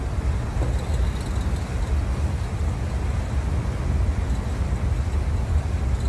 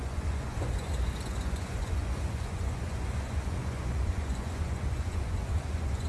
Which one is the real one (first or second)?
first